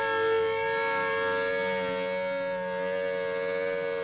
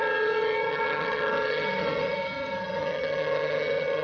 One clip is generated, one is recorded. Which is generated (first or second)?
second